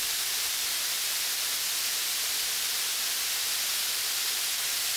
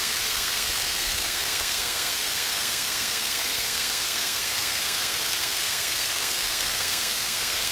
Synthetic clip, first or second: second